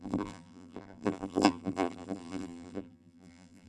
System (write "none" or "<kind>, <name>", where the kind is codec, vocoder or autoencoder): vocoder, BigVGAN v2